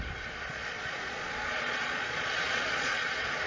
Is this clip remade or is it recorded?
remade